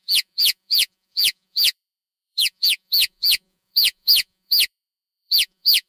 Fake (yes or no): yes